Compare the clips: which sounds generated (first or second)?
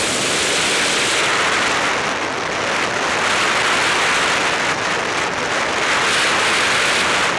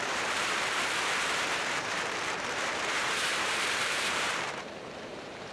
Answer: second